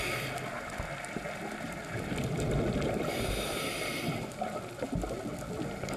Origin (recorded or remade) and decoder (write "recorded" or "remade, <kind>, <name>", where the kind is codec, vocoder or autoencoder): recorded